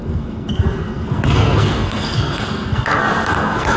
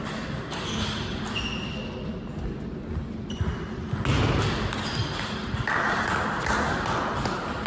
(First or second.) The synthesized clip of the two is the first